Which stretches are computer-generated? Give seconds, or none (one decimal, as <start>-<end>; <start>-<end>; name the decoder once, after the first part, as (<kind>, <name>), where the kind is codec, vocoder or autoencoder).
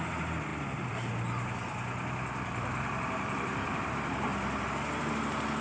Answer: 0.5-3.9 (vocoder, BigVGAN v2)